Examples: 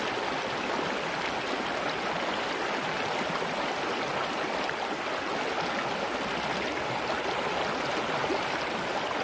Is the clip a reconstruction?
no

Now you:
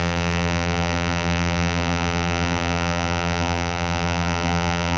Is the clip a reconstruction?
yes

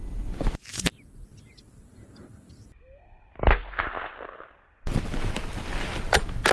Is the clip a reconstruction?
no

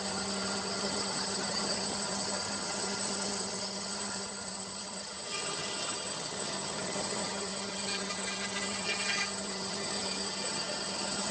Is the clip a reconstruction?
yes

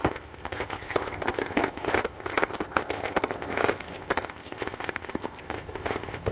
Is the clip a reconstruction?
yes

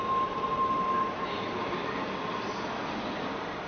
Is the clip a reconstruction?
no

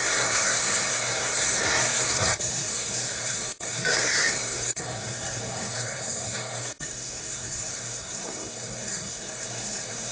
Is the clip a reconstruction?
yes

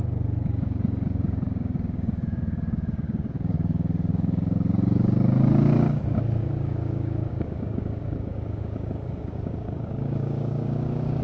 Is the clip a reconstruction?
yes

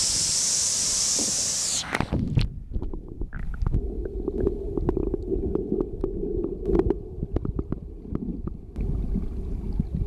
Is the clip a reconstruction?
no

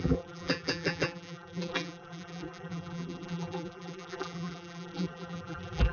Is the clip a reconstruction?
yes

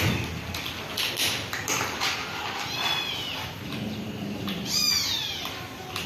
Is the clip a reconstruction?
no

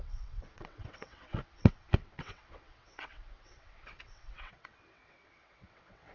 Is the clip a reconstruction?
yes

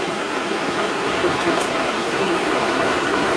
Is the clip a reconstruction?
yes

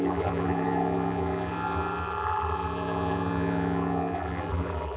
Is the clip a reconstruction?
yes